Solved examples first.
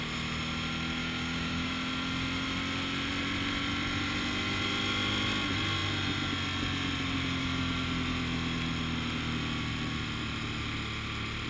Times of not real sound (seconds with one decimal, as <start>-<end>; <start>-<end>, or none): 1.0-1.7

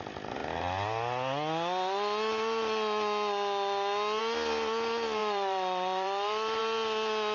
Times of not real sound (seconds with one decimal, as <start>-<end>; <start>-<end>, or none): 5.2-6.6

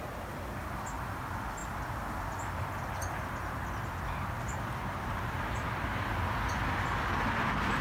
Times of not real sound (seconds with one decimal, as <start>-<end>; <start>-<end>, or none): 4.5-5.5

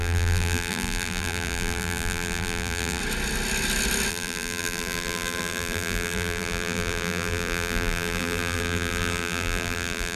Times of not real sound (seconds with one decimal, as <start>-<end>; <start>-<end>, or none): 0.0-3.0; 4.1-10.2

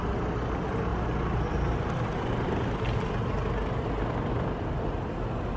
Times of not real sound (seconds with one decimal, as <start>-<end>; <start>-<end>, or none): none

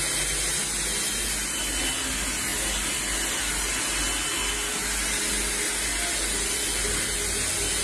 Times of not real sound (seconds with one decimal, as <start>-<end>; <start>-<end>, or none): none

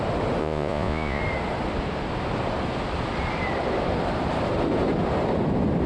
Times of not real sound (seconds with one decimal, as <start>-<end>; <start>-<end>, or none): 0.4-1.2

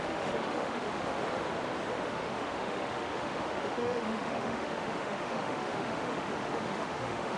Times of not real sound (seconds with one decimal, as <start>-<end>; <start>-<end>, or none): 0.0-1.2; 1.9-7.4